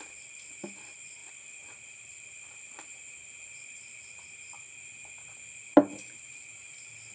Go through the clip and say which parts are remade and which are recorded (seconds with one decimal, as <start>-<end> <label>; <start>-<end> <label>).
0.0-1.2 recorded; 1.2-4.2 remade; 4.2-7.1 recorded